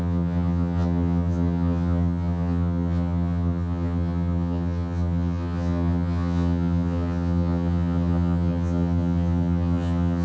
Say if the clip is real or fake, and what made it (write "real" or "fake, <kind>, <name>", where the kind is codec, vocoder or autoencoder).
fake, vocoder, HiFi-GAN